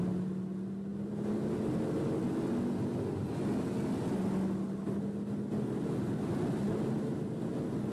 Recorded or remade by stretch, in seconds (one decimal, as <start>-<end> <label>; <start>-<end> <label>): 0.0-7.9 recorded